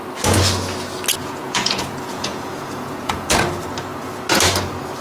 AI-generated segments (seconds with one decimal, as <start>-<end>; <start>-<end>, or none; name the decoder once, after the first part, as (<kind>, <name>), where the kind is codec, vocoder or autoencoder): 1.2-3.4 (vocoder, Vocos)